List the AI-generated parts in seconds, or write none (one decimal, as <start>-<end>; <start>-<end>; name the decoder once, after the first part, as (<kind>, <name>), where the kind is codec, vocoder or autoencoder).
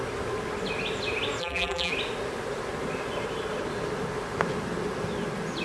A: 1.4-1.9 (vocoder, BigVGAN v2)